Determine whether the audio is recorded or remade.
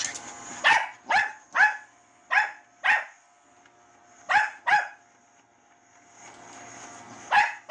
recorded